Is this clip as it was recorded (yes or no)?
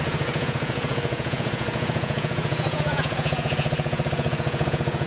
no